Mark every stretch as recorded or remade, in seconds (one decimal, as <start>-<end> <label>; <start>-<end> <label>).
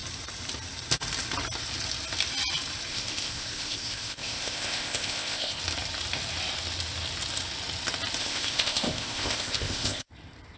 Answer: 0.0-2.9 recorded; 2.9-5.6 remade; 5.6-8.2 recorded; 8.2-10.1 remade; 10.1-10.6 recorded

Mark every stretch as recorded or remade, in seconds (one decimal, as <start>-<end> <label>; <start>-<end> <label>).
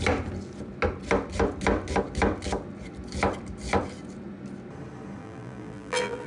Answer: 0.0-5.2 recorded; 5.2-6.3 remade